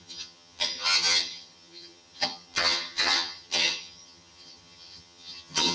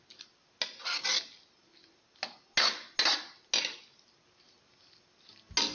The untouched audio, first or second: second